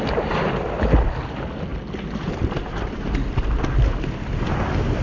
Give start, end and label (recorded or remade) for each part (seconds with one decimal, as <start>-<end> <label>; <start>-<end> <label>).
0.0-5.0 recorded